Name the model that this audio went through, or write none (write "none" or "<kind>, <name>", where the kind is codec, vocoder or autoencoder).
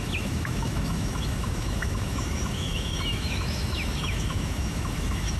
autoencoder, DAC-VAE